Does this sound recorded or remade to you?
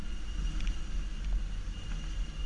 recorded